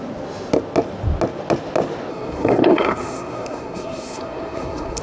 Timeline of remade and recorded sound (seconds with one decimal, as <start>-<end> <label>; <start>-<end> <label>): 0.0-2.1 recorded; 2.1-5.0 remade